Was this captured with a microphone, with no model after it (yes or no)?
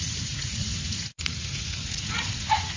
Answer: no